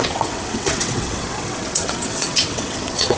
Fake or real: fake